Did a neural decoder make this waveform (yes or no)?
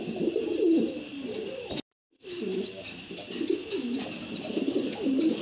no